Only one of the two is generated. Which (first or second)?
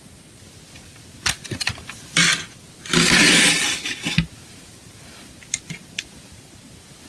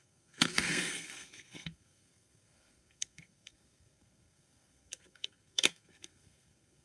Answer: second